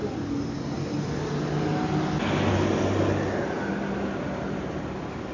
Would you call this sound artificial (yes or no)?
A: no